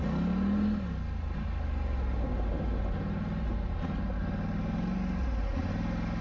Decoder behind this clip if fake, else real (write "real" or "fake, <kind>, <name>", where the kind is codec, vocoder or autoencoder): real